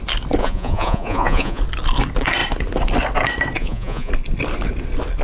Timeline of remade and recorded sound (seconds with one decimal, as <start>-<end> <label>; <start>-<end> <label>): 0.0-0.4 recorded; 0.4-1.6 remade; 1.6-3.6 recorded; 3.6-4.1 remade; 4.1-5.2 recorded